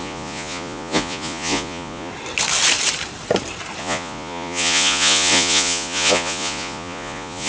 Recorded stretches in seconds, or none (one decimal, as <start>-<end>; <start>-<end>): 2.1-3.8